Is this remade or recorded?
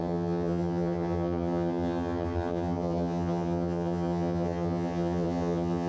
remade